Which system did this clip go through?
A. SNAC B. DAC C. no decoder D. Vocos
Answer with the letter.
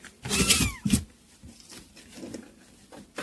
C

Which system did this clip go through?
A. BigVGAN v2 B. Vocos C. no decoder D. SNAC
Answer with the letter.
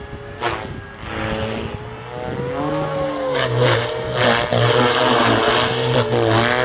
C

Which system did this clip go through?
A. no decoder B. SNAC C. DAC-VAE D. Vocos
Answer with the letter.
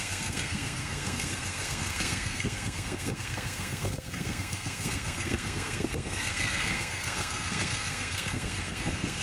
B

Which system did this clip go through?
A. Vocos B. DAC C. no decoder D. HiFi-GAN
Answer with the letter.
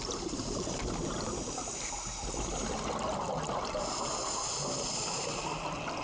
C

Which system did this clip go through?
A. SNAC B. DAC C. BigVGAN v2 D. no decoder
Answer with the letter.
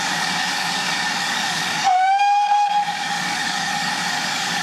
B